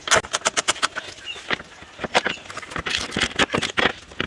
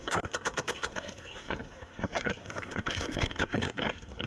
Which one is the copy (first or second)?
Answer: second